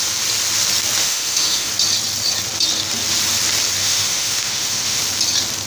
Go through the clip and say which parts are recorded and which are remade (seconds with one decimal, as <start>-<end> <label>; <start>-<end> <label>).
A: 0.0-1.0 recorded; 1.0-1.7 remade; 1.7-3.8 recorded; 3.8-5.0 remade; 5.0-5.7 recorded